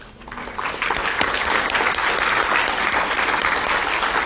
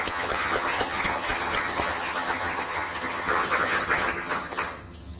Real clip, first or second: first